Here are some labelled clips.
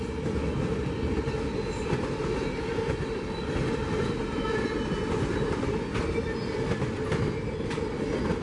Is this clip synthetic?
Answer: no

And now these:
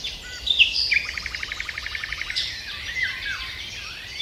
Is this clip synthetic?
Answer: yes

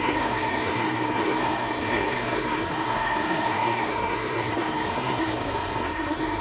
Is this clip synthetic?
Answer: yes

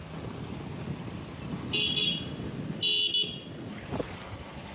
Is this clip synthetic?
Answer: no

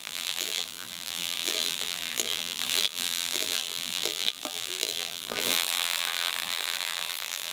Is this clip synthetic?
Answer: yes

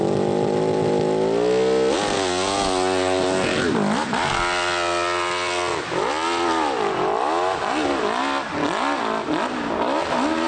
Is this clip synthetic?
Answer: no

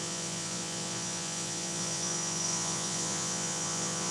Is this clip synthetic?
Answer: yes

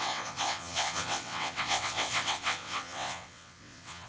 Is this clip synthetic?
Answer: yes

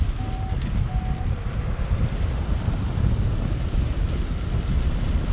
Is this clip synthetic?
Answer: no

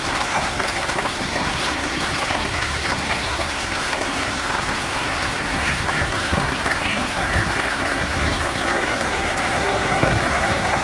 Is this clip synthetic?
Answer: yes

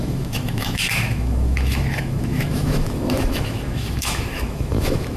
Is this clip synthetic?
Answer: yes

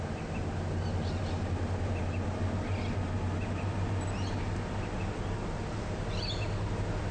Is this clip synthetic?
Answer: no